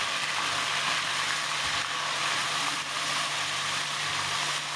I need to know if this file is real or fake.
real